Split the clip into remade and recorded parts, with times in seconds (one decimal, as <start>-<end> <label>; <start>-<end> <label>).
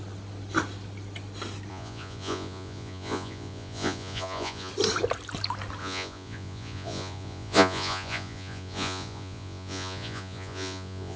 0.0-1.7 recorded; 1.7-4.7 remade; 4.7-5.8 recorded; 5.8-11.2 remade